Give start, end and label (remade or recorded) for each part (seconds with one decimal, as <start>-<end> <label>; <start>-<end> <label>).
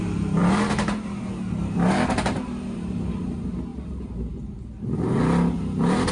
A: 0.0-0.4 recorded; 0.4-3.1 remade; 3.1-6.1 recorded